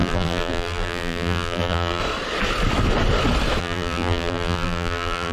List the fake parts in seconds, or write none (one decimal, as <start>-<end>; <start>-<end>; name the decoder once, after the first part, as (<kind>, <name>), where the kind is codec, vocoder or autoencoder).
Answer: 0.0-2.0 (vocoder, BigVGAN v2); 3.6-5.3